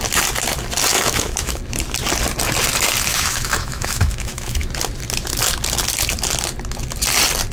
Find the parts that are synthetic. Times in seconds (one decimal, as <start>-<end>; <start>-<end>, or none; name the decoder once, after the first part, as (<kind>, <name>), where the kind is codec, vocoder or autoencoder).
0.9-1.6 (autoencoder, DAC-VAE); 3.1-4.7